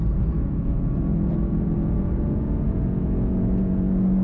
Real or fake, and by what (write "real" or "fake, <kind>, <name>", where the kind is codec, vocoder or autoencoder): fake, vocoder, Vocos